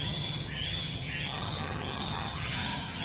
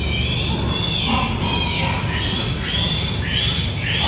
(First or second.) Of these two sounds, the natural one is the second